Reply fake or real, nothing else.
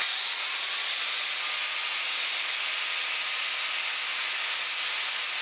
real